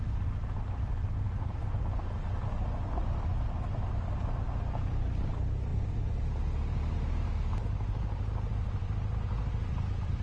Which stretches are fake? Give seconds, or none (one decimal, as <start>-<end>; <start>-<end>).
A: none